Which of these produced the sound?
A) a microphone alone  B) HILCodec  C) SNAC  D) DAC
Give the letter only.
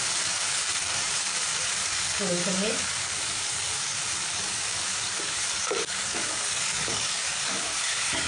D